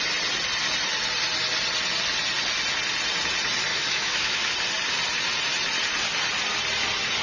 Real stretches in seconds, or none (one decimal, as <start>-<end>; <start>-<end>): 0.0-3.7; 4.5-7.2